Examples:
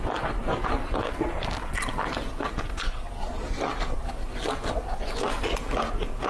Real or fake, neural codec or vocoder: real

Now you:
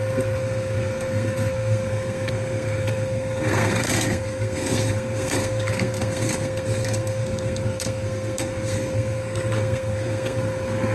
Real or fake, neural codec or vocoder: fake, codec, SNAC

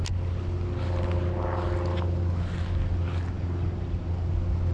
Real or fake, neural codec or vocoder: real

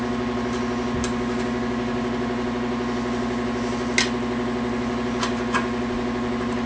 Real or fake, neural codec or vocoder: real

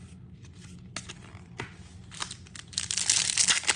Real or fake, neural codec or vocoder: real